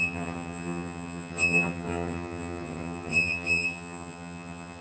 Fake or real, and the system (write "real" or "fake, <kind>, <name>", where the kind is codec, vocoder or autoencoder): fake, vocoder, HiFi-GAN